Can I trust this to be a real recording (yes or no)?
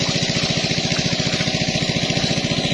yes